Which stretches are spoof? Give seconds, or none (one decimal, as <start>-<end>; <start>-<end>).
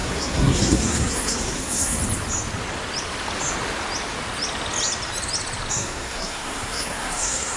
0.0-2.0; 5.7-7.6